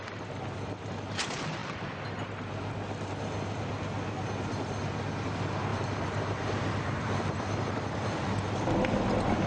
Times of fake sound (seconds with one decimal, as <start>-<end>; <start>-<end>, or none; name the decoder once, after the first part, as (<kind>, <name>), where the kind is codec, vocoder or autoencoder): 5.7-8.6 (vocoder, BigVGAN v2)